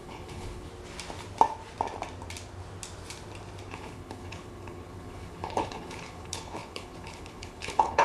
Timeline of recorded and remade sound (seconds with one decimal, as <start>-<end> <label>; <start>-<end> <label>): 0.0-0.7 remade; 0.7-3.7 recorded; 3.7-8.0 remade

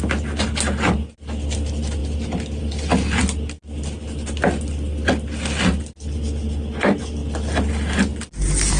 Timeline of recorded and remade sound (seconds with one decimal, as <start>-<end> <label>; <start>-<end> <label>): 0.0-8.8 recorded